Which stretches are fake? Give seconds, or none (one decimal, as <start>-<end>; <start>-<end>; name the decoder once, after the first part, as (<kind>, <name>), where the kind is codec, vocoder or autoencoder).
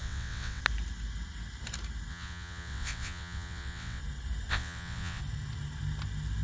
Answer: 0.0-0.6 (vocoder, WaveNeXt); 2.1-4.0; 4.5-5.2